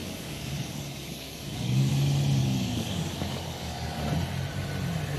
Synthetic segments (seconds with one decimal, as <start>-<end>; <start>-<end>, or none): 0.0-1.9; 2.4-4.0